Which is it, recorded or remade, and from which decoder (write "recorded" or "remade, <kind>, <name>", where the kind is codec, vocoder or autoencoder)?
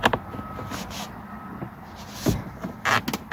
recorded